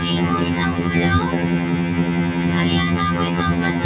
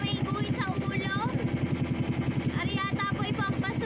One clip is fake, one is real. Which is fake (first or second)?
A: first